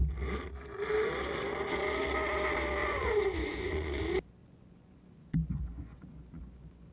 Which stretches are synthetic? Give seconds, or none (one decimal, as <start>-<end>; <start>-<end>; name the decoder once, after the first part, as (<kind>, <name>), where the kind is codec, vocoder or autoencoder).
2.8-4.0 (vocoder, Vocos); 4.4-6.9